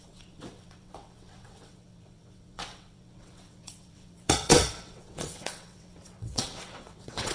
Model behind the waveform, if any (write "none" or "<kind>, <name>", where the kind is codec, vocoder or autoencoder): vocoder, WaveNeXt